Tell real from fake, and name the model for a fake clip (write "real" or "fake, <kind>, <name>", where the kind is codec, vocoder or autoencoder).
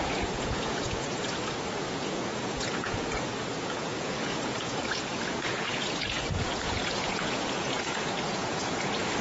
fake, vocoder, Vocos